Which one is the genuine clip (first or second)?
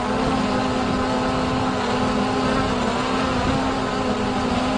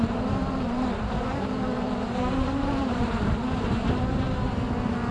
first